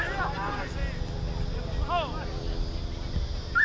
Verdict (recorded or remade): recorded